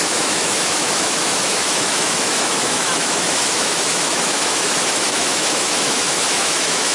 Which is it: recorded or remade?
remade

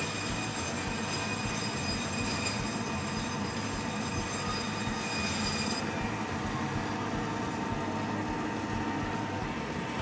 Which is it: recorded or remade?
recorded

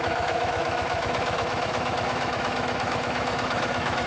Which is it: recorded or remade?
remade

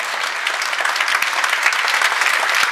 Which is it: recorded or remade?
recorded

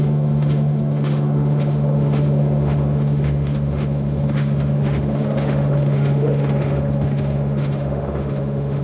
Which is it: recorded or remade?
remade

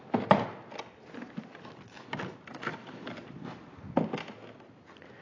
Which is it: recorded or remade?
recorded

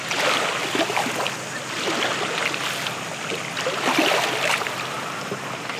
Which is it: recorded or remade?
recorded